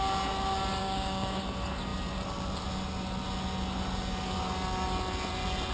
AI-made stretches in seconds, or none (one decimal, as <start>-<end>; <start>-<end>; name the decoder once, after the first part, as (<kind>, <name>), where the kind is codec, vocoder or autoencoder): 0.8-1.4 (codec, DAC)